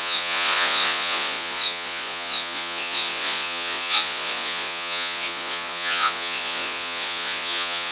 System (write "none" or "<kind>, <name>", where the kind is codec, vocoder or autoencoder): vocoder, Vocos